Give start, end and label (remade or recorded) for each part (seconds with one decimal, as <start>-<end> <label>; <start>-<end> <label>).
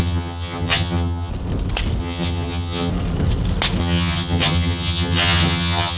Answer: 0.0-1.3 remade; 1.3-2.0 recorded; 2.0-2.9 remade; 2.9-3.8 recorded; 3.8-6.0 remade